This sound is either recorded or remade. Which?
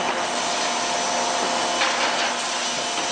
recorded